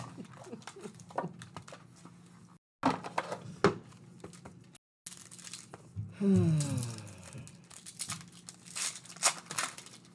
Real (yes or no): yes